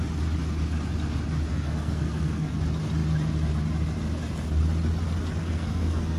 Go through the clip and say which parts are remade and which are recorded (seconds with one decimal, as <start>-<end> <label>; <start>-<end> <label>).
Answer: 0.0-1.5 recorded; 1.5-2.6 remade; 2.6-5.4 recorded; 5.4-6.2 remade